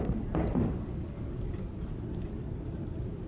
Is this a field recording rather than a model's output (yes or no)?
no